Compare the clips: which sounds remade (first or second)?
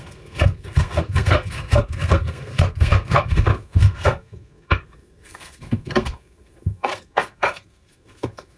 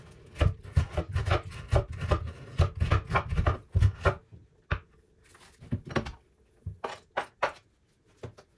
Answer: first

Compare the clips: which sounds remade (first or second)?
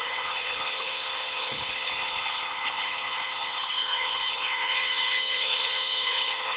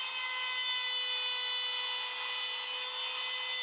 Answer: first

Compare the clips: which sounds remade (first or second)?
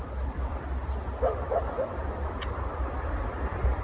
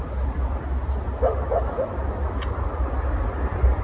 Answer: first